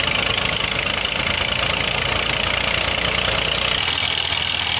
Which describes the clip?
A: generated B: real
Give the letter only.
B